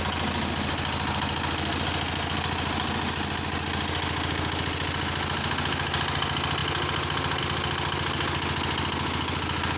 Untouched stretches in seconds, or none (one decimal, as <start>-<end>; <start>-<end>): 0.0-9.8

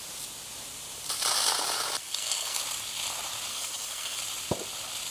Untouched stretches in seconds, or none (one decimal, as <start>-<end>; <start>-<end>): 0.0-2.0; 2.6-3.5; 4.2-5.1

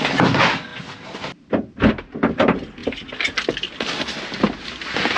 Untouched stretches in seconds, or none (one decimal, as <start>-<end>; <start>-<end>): 0.0-5.2

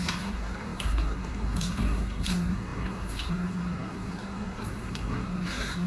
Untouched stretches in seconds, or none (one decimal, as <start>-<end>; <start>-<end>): none

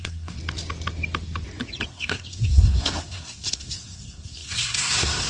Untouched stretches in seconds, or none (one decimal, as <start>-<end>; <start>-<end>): 0.4-1.9

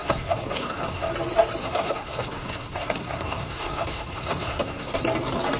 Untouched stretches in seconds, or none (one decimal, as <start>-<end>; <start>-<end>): 1.1-1.6; 5.0-5.6

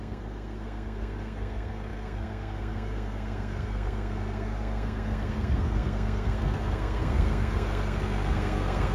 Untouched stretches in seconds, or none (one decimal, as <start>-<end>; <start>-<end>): none

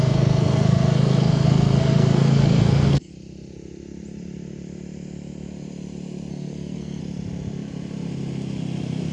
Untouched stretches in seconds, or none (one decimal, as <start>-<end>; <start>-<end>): 3.1-6.3; 7.0-9.1